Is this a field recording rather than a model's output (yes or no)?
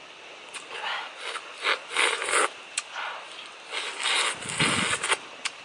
yes